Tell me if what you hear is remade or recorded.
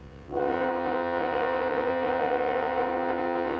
remade